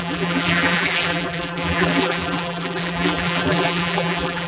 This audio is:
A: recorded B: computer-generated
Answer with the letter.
B